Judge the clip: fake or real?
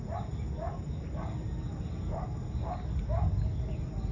real